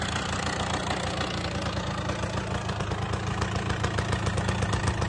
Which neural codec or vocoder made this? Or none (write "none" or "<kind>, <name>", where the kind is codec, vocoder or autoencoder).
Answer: none